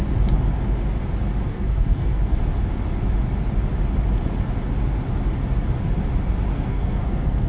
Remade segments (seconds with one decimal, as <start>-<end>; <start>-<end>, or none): 1.5-2.4; 6.5-7.5